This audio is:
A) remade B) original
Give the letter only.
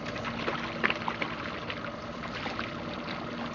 B